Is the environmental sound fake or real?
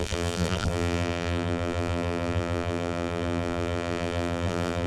fake